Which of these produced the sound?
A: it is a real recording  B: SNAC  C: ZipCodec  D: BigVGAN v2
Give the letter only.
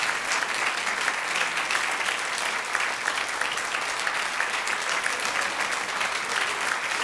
A